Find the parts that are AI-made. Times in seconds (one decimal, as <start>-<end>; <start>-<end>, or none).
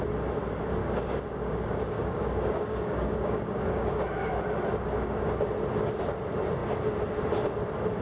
0.8-4.3